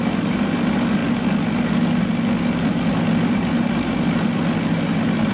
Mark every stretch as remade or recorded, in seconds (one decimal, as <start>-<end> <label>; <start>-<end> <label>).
0.0-5.3 recorded

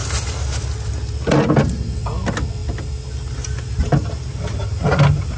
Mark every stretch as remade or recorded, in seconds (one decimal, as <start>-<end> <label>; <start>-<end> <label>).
0.0-5.4 recorded